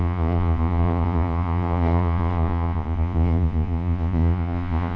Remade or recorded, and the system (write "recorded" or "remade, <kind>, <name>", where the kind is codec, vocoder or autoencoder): remade, vocoder, Vocos